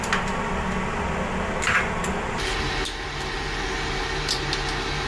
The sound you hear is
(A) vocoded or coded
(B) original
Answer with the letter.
B